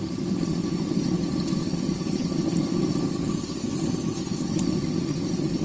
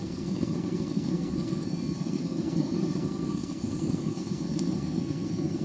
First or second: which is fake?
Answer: second